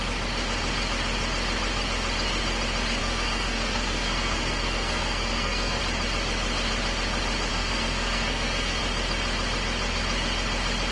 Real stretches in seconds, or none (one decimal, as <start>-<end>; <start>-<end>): 0.0-3.0; 5.8-7.5; 8.8-10.9